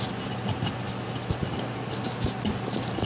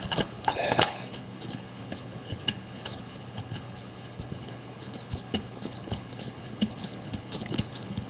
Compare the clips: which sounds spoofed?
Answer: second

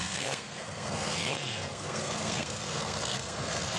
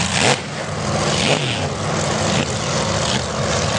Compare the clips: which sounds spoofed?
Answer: first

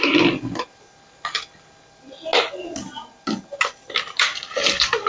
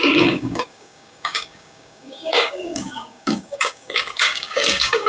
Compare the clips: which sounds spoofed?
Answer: second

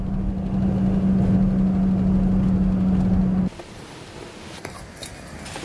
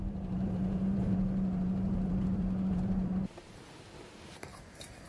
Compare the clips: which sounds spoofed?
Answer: second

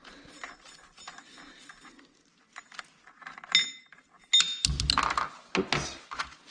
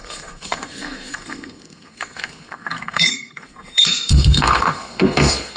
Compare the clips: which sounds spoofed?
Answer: second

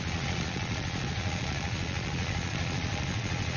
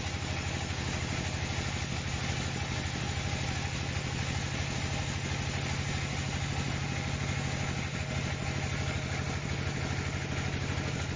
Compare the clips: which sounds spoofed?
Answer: first